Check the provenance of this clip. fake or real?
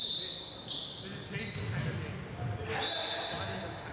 real